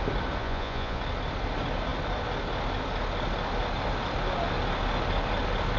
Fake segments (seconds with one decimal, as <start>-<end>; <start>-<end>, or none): 0.4-1.0